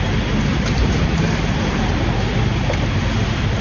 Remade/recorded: recorded